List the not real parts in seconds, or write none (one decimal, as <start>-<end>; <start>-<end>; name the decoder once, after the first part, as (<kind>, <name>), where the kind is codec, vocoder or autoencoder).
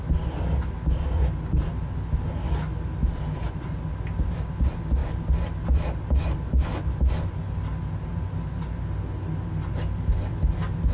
none